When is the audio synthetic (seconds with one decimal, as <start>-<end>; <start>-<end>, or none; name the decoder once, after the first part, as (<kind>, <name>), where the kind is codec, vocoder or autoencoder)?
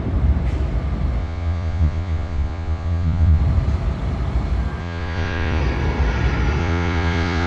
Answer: 1.2-3.4 (vocoder, Vocos); 4.8-5.6; 6.6-7.5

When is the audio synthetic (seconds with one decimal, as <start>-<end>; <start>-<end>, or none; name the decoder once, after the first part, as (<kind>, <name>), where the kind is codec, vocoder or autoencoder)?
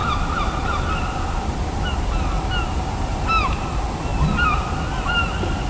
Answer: 0.0-2.5 (vocoder, BigVGAN v2); 4.1-4.9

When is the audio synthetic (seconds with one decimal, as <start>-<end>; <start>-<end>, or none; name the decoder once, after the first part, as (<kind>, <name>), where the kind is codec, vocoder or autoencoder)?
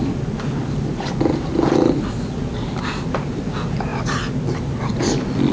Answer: none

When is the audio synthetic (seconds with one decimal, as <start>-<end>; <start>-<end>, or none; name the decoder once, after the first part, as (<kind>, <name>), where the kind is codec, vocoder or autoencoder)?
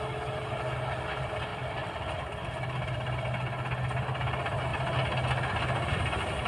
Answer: 1.5-3.3 (vocoder, BigVGAN v2); 4.7-6.0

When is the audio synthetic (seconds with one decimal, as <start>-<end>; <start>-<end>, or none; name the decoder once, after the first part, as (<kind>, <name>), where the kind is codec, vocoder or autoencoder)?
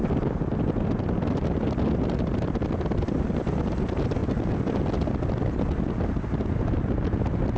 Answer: none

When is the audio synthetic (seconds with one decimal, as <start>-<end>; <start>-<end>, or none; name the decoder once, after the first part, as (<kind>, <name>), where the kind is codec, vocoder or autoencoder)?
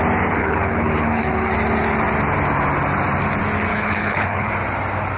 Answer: 0.4-1.5 (codec, HILCodec); 3.7-4.5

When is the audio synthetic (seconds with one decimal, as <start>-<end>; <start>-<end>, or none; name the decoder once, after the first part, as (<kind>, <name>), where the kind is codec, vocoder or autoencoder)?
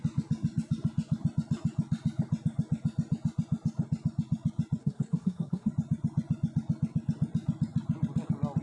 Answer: 4.8-5.7 (codec, SNAC)